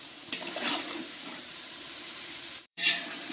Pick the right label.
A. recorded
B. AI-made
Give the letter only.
B